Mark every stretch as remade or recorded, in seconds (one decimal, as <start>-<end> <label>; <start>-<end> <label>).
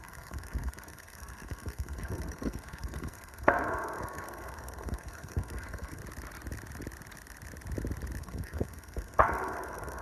0.0-6.0 remade; 6.0-8.2 recorded; 8.2-10.0 remade